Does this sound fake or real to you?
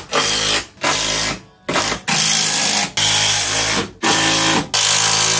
real